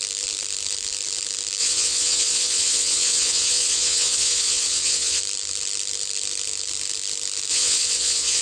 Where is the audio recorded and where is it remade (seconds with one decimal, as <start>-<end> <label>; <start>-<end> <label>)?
0.0-1.6 recorded; 1.6-5.2 remade; 5.2-7.5 recorded; 7.5-8.4 remade